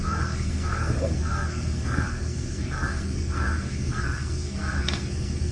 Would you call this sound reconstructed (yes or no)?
yes